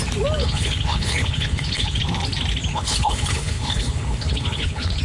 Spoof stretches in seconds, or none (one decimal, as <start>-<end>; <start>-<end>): 0.4-2.0; 2.7-5.0